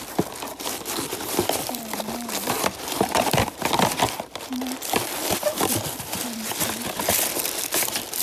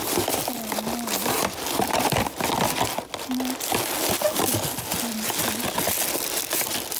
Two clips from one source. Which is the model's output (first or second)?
first